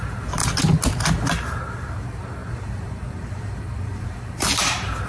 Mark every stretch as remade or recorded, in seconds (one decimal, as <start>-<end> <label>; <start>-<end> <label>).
0.0-0.4 remade; 0.4-1.3 recorded; 1.3-5.1 remade